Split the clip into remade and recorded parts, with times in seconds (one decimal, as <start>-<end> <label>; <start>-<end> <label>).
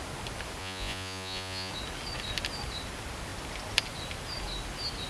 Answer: 0.0-0.6 recorded; 0.6-1.7 remade; 1.7-5.1 recorded